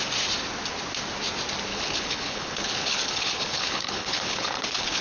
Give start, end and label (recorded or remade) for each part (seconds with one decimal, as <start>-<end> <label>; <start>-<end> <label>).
0.0-1.7 recorded; 1.7-5.0 remade